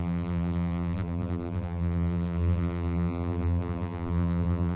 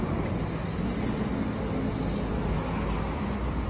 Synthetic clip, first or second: first